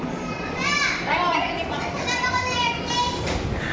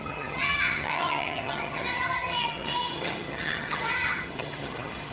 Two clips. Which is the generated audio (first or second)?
second